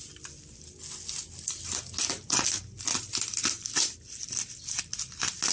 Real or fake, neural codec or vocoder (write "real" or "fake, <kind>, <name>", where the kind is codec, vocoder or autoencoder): real